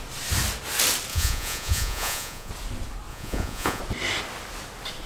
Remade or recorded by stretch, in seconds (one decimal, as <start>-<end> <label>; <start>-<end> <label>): 0.0-1.1 recorded; 1.1-2.5 remade; 2.5-3.1 recorded; 3.1-3.8 remade; 3.8-5.1 recorded